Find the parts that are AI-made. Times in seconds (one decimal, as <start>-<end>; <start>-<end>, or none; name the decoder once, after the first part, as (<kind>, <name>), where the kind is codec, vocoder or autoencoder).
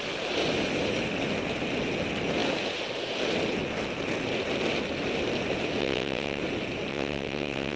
5.8-6.4 (vocoder, WaveNeXt); 6.9-7.8